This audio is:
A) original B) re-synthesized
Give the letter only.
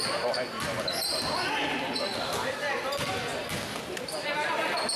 A